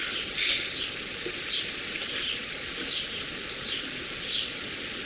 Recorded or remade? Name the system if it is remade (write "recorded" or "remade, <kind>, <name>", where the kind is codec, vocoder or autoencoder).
recorded